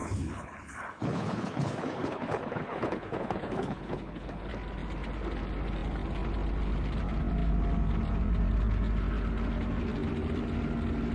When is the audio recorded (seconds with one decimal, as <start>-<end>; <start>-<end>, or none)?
4.5-11.1